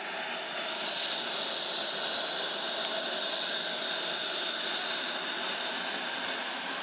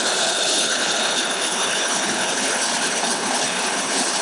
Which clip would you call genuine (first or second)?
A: first